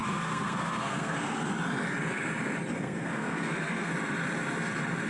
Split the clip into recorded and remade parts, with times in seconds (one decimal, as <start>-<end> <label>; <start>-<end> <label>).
0.0-1.5 remade; 1.5-2.7 recorded; 2.7-3.9 remade; 3.9-5.1 recorded